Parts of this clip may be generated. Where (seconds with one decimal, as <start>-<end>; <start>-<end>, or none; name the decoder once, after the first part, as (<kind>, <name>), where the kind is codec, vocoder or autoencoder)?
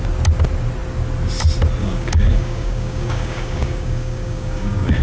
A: 1.8-5.0 (codec, DAC)